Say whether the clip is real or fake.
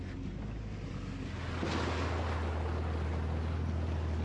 real